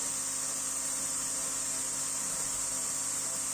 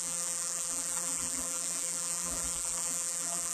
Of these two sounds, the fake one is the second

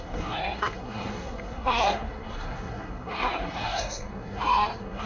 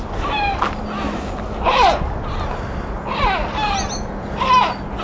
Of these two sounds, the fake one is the first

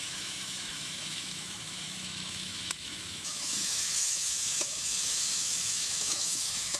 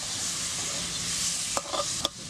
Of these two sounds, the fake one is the first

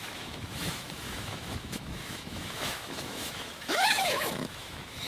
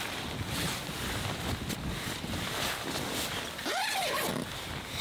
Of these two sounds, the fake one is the first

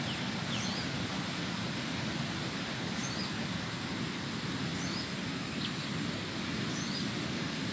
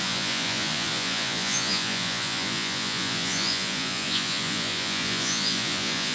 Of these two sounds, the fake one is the second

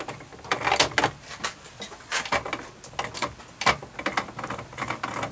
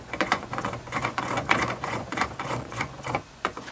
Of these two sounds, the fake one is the second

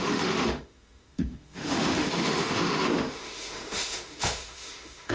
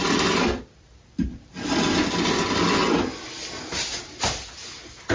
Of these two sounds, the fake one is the first